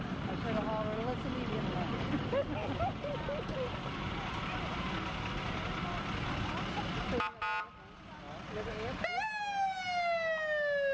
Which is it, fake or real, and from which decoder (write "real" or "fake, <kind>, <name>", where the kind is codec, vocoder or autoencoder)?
real